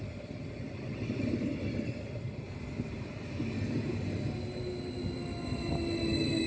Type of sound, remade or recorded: recorded